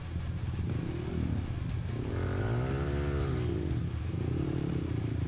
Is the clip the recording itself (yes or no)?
yes